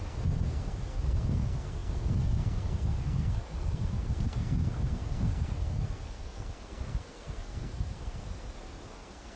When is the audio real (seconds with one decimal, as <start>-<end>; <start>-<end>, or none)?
none